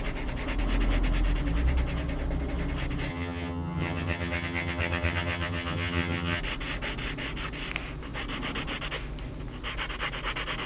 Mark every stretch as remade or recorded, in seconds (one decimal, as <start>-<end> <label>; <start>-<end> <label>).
0.0-3.1 recorded; 3.1-6.4 remade; 6.4-10.7 recorded